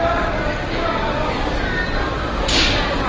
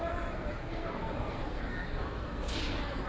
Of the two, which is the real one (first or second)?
first